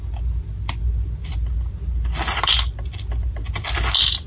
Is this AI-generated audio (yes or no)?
no